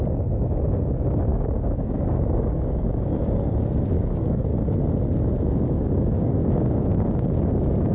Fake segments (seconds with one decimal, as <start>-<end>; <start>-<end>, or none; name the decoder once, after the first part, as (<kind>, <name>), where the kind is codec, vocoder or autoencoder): 0.0-4.5 (codec, DAC); 5.5-7.9